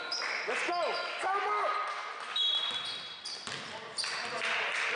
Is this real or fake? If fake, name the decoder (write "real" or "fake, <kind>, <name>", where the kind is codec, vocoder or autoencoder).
real